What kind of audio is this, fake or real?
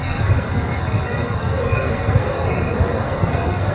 fake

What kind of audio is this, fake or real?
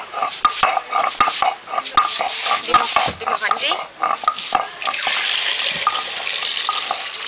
real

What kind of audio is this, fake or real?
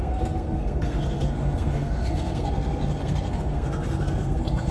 fake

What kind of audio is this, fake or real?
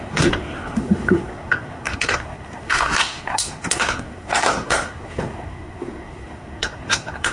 fake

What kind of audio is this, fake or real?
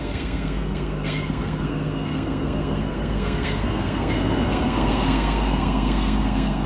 fake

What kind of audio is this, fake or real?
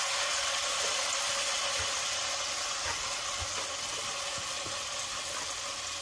real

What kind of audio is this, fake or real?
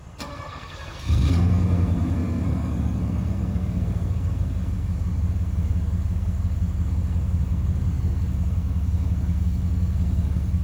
fake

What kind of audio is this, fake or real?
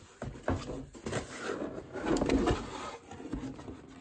real